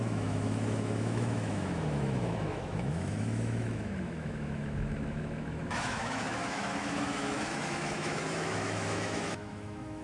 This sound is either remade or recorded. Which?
remade